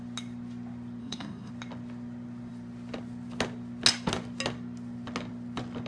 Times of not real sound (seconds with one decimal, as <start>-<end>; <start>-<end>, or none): 1.0-1.5